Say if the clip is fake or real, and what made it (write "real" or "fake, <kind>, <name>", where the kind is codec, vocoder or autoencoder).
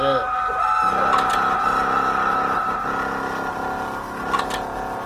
real